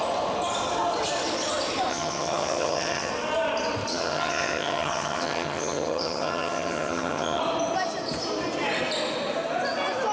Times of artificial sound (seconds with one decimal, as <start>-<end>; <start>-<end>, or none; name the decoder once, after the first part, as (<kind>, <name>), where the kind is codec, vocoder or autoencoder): 1.9-3.1 (vocoder, HiFi-GAN); 3.9-7.4